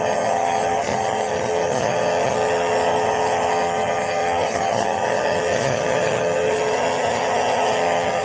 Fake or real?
fake